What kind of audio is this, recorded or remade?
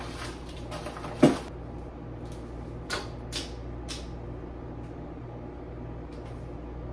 recorded